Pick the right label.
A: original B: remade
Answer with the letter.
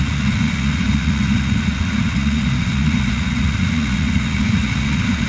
B